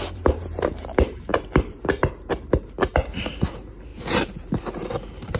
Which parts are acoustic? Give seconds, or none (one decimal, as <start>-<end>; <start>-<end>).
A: none